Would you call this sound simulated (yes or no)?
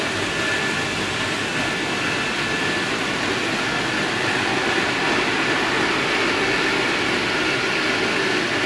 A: no